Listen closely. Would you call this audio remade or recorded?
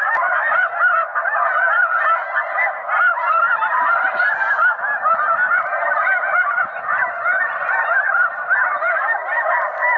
remade